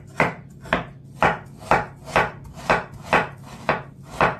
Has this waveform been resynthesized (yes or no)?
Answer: no